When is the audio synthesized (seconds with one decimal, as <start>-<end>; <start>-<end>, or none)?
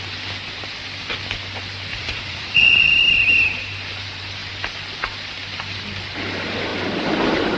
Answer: 1.9-2.9